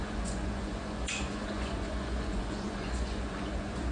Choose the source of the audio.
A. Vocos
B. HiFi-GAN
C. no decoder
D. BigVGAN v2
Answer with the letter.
A